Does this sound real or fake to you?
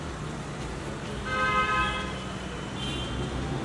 real